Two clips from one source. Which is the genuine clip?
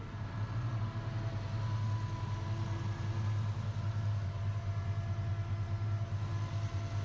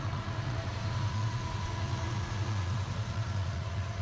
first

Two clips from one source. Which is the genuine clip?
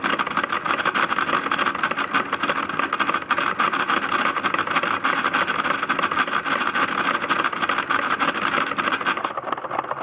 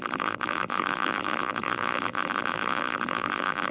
first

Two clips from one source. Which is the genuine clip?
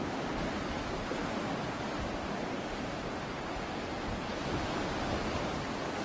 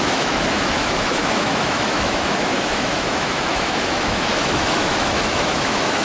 first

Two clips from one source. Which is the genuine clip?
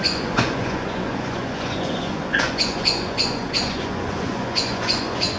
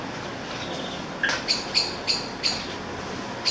second